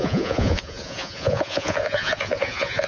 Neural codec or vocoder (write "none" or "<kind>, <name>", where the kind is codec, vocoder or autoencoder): vocoder, Vocos